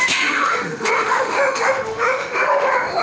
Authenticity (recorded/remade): remade